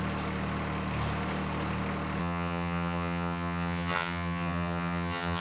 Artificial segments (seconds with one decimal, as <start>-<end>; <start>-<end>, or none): 2.2-5.4